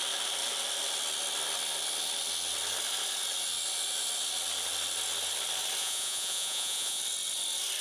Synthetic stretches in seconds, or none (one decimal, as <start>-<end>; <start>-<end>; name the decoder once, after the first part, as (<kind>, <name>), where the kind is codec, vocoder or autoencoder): 5.8-7.0 (vocoder, Vocos)